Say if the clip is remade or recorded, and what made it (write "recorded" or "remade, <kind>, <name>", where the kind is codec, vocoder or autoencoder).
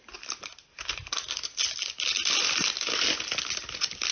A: recorded